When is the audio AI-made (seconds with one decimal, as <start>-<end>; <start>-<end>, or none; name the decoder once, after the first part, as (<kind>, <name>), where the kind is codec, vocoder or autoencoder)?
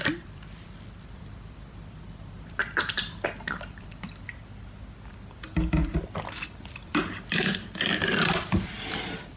0.0-4.4 (vocoder, BigVGAN v2); 7.5-9.4